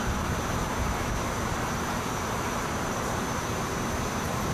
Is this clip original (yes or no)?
no